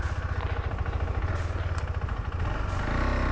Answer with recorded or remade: recorded